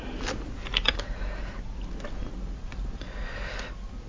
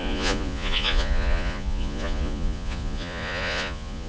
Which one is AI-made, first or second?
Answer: second